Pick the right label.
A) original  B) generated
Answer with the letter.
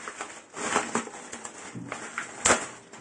A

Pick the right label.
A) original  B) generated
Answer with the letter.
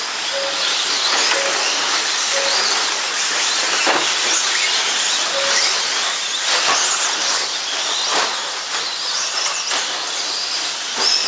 A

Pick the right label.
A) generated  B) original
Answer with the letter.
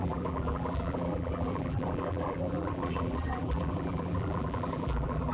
A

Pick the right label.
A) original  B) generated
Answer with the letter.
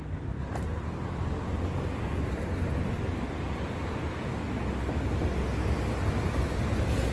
A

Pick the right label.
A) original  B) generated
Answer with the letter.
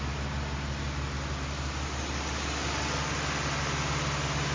A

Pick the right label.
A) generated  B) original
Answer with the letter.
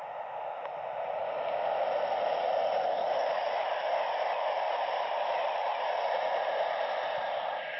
B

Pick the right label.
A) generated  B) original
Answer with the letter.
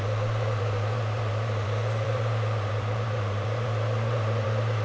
A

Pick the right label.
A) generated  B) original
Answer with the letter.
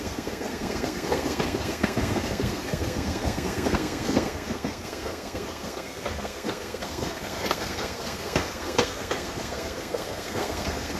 A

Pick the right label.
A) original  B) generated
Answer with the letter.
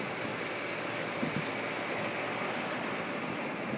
A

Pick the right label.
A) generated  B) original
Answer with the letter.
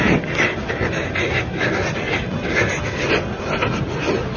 B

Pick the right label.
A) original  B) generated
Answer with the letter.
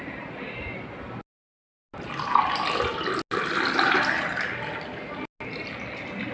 A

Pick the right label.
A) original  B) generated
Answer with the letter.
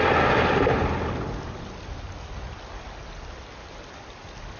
A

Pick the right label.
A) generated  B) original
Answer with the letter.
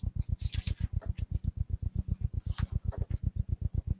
B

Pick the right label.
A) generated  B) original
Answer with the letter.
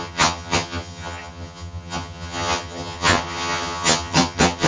A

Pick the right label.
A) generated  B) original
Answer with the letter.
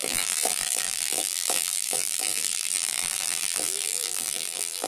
A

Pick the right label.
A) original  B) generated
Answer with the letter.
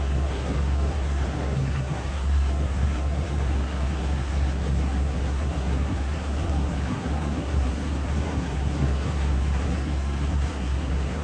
B